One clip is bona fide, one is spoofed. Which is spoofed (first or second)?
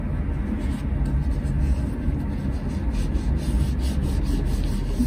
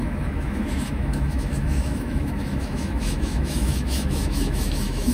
second